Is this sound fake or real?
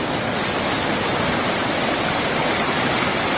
real